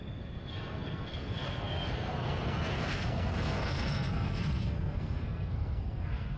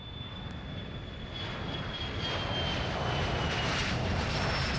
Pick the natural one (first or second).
second